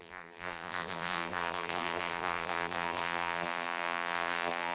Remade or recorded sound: remade